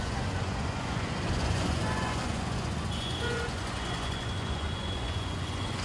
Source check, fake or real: fake